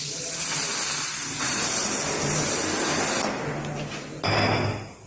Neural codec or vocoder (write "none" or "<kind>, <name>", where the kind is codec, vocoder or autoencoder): none